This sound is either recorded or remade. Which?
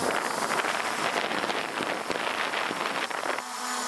recorded